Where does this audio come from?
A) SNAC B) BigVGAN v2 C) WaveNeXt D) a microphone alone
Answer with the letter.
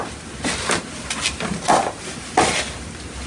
D